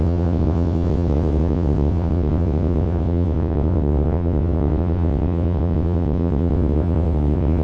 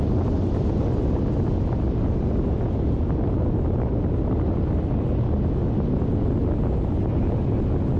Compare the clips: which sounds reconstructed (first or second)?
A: first